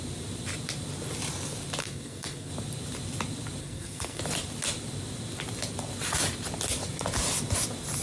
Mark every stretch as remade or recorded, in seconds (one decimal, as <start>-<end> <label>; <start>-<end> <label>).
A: 0.0-1.8 recorded; 1.8-2.5 remade; 2.5-3.6 recorded; 3.6-4.2 remade; 4.2-8.0 recorded